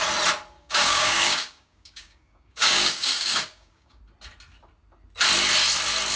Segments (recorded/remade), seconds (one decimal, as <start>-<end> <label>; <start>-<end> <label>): 0.0-0.6 recorded; 0.6-4.0 remade; 4.0-6.2 recorded